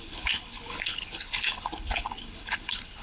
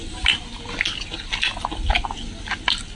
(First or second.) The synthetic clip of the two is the first